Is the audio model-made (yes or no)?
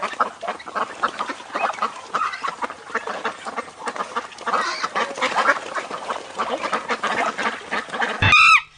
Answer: no